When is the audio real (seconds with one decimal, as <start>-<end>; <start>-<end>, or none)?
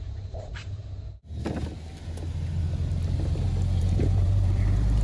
0.8-3.8